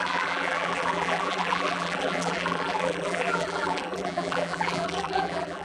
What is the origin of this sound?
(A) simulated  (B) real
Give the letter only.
A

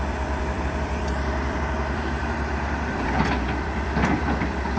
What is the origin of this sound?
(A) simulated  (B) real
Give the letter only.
A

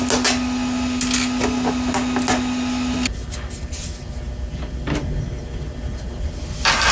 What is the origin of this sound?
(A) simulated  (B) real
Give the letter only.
B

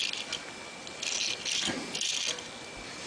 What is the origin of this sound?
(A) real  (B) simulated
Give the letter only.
A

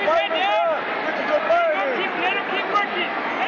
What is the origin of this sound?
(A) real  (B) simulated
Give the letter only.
A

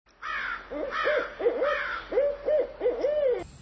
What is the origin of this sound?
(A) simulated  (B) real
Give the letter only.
B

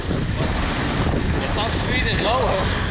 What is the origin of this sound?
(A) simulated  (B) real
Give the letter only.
B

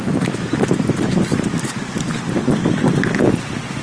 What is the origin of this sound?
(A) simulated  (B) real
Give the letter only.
B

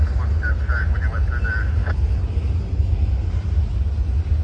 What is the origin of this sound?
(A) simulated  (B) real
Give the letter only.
B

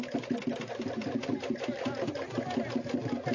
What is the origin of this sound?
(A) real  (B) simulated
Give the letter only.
A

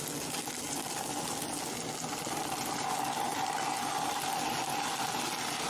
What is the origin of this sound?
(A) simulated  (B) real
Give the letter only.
B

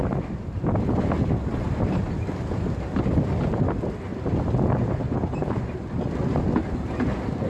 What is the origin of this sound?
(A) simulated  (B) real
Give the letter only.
B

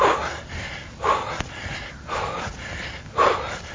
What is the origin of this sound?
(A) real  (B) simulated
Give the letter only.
A